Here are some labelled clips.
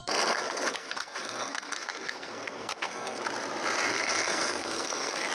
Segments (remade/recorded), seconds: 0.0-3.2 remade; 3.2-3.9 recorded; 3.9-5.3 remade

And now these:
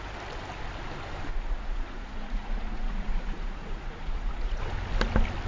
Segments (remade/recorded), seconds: 0.0-1.3 recorded; 1.3-4.6 remade; 4.6-5.5 recorded

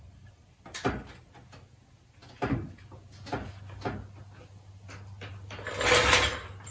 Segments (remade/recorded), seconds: 0.0-6.7 recorded

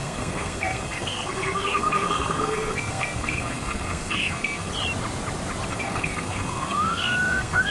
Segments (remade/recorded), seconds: 0.0-4.7 remade; 4.7-5.7 recorded; 5.7-7.7 remade

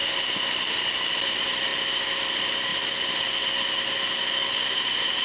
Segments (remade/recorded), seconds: 0.0-5.2 recorded

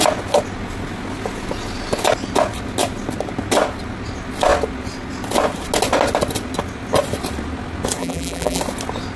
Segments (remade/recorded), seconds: 0.0-8.0 recorded; 8.0-8.6 remade; 8.6-9.2 recorded